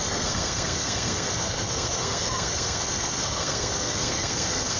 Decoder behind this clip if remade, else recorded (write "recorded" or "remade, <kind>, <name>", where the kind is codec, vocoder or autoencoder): remade, codec, SNAC